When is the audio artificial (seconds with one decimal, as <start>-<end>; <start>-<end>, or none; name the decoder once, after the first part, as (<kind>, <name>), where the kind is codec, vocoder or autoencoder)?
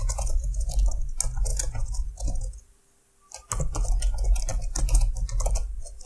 0.0-0.7 (vocoder, Vocos); 1.5-2.7